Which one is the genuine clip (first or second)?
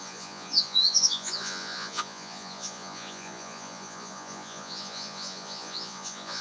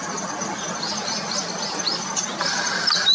second